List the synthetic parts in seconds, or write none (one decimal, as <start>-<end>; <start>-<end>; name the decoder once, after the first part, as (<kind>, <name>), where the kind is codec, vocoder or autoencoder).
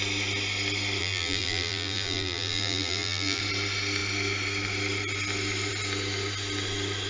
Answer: 1.0-3.4 (vocoder, BigVGAN v2)